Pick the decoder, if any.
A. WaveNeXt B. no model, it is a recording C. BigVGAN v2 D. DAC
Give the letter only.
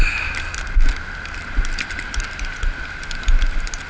B